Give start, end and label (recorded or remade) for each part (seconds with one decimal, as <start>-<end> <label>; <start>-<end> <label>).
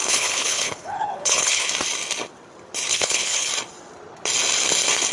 0.0-1.7 remade; 1.7-2.9 recorded; 2.9-3.5 remade; 3.5-5.1 recorded